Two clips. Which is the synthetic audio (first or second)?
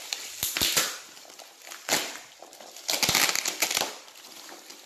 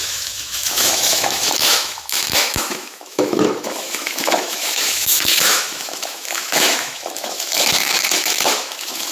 second